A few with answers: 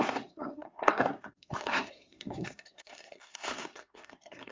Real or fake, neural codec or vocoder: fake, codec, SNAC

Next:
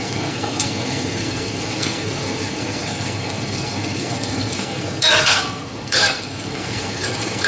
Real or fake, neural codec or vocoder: fake, codec, SNAC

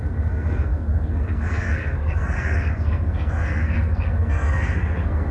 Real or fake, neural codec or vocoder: fake, codec, SNAC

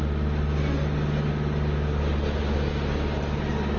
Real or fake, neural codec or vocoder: real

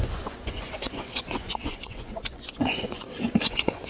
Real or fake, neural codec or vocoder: fake, vocoder, Vocos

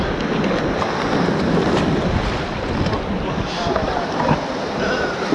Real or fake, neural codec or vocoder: real